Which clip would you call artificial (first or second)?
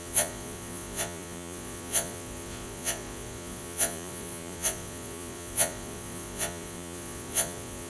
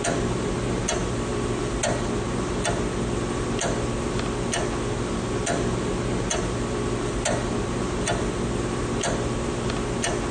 first